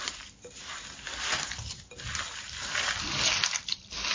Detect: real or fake fake